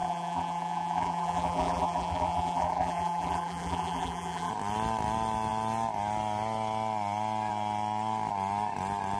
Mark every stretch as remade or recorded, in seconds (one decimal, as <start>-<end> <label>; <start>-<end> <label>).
0.0-4.5 remade; 4.5-9.2 recorded